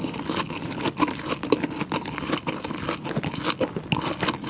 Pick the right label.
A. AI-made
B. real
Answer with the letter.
B